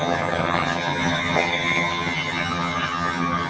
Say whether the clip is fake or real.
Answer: fake